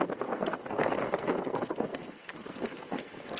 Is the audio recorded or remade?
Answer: remade